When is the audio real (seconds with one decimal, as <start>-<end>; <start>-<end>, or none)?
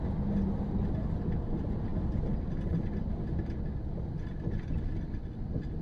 0.0-5.8